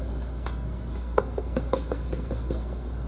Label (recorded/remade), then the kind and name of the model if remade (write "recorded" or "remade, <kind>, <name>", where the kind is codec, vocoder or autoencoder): remade, codec, SNAC